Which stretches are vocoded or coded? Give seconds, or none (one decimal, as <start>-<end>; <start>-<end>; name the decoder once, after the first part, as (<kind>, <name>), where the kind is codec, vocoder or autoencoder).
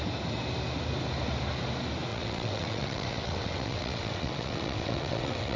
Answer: 2.1-5.6 (vocoder, WaveNeXt)